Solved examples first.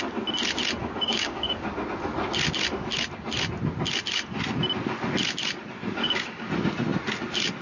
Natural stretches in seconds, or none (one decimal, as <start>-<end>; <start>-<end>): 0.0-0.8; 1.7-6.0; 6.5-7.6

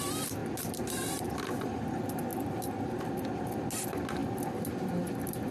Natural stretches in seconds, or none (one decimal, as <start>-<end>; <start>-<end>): 0.0-5.5

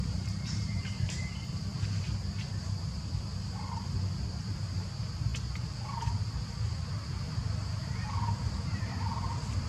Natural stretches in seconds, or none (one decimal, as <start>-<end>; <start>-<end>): 1.7-3.0; 5.3-7.2

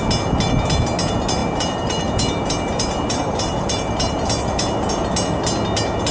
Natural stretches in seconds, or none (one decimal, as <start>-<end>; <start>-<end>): 0.0-1.4; 5.1-6.1

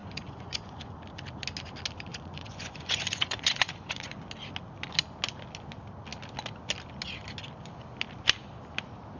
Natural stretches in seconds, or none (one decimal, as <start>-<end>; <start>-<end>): 0.9-2.1; 4.2-9.2

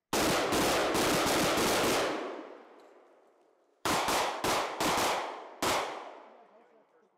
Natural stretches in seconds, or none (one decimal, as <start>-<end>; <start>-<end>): 0.0-3.7; 4.4-7.2

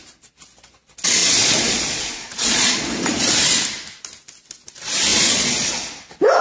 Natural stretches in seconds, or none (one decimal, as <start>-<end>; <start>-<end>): 0.0-1.2; 3.3-5.1; 5.7-6.4

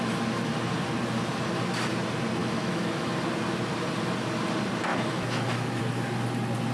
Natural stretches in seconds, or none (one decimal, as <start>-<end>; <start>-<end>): 0.0-2.4; 3.1-4.9; 5.8-6.7